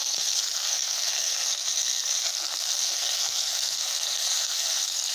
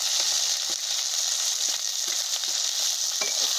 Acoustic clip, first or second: second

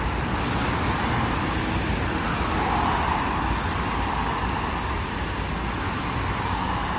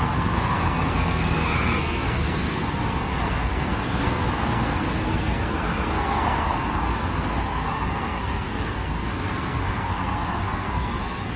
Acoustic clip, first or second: first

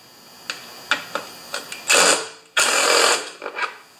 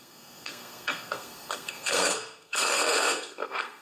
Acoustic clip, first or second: first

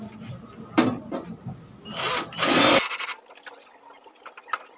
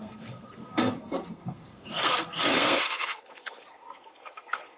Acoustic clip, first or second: first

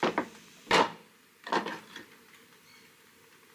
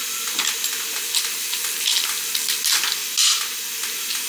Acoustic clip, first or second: second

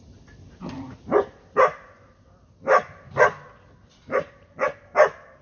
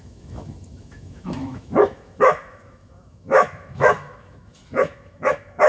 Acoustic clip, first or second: first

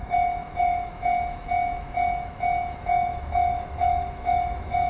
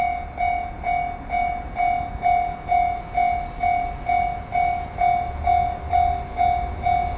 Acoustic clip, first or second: second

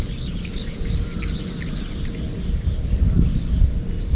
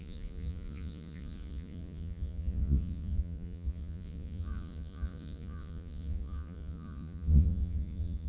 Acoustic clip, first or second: first